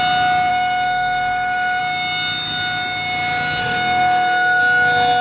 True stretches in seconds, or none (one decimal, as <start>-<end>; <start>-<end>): 0.0-0.5; 1.8-3.6; 4.6-5.2